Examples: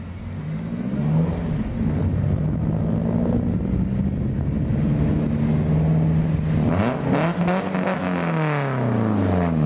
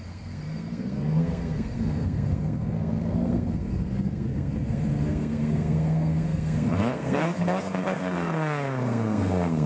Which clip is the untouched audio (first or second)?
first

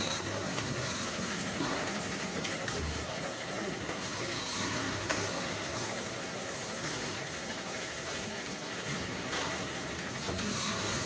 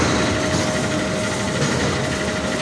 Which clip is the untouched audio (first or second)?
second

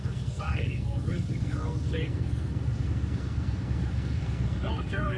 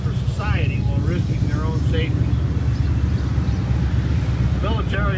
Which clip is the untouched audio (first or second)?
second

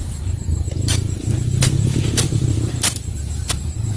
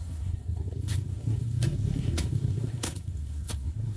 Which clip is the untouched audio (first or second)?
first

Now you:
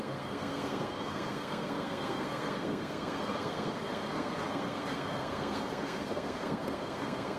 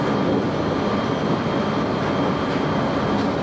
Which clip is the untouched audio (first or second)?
second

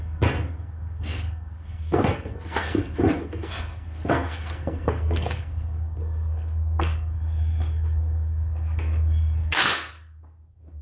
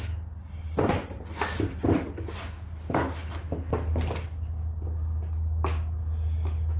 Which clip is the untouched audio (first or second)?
second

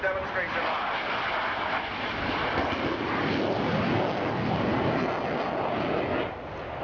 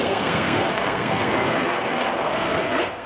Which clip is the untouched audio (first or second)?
first